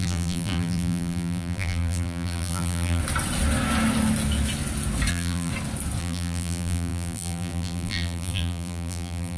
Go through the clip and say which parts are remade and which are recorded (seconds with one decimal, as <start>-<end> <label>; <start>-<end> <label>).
0.0-3.0 remade; 3.0-5.1 recorded; 5.1-5.5 remade; 5.5-6.0 recorded; 6.0-9.4 remade